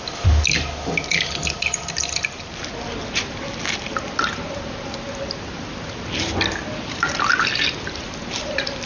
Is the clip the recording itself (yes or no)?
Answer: yes